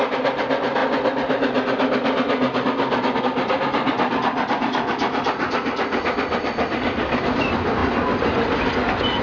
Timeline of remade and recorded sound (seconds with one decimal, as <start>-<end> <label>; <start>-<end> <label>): 0.0-9.2 recorded